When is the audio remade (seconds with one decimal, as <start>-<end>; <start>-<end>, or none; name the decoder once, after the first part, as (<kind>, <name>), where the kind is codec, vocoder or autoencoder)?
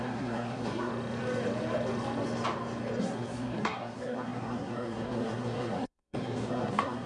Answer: 0.0-0.9 (codec, SNAC); 3.0-7.1